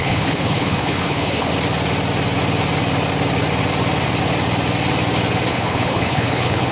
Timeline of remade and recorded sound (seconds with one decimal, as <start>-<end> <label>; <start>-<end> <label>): 0.0-1.5 remade; 1.5-5.5 recorded; 5.5-6.7 remade